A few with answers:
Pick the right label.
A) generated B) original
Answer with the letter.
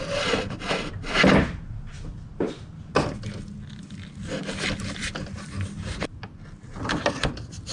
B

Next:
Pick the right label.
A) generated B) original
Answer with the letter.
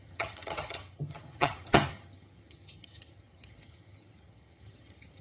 A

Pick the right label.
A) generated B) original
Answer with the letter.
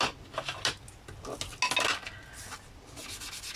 B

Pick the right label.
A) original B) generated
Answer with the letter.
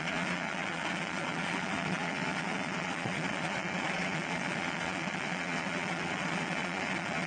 B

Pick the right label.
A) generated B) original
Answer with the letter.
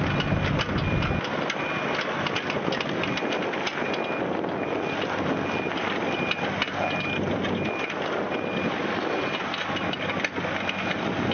B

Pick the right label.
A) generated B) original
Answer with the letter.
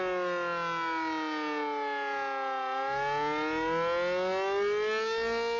B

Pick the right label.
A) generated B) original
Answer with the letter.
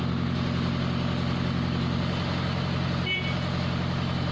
B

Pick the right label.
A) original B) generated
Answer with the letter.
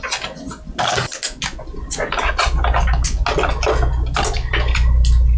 A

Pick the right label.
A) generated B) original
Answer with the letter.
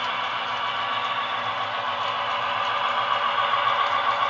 B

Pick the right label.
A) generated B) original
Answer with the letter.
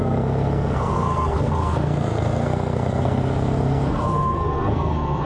A